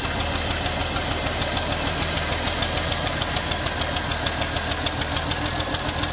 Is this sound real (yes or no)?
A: yes